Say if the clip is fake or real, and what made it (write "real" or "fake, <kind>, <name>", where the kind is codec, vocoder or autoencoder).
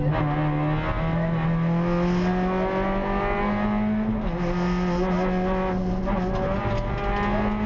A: real